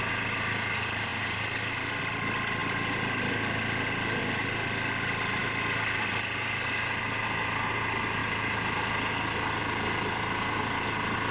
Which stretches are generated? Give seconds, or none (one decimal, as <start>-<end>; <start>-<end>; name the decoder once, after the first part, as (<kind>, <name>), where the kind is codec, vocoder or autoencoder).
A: none

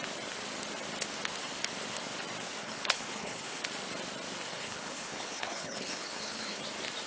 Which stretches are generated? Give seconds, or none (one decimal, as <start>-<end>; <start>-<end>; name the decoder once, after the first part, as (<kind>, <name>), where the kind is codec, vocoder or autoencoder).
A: 2.6-3.6 (codec, HILCodec); 4.5-6.6

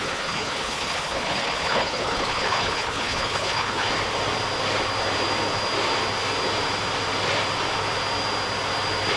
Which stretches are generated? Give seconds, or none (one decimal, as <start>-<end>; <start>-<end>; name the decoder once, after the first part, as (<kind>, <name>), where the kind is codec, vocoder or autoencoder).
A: 0.0-3.9 (codec, HILCodec)

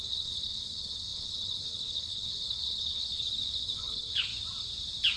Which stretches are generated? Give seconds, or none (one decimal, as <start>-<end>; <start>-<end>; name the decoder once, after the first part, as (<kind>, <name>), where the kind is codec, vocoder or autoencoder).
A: 0.0-4.3 (codec, HILCodec)